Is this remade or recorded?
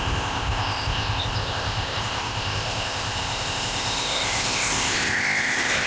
remade